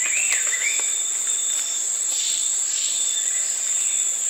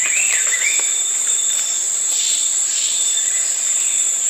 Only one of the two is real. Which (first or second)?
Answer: first